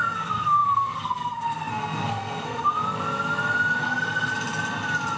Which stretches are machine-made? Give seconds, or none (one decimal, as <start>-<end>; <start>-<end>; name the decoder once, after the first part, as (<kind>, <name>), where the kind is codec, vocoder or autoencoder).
0.0-2.8 (codec, SNAC); 3.8-4.3